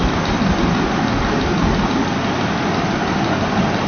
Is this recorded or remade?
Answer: recorded